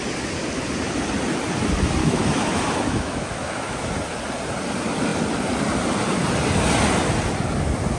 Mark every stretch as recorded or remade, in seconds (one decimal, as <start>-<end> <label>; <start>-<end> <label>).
0.0-2.0 recorded; 2.0-3.9 remade; 3.9-8.0 recorded